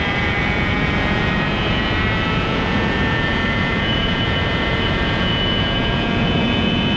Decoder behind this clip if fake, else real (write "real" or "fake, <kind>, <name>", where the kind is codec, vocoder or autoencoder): fake, vocoder, Vocos